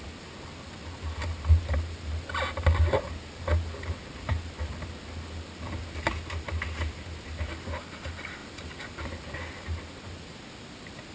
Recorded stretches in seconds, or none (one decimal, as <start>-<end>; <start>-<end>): 0.0-11.1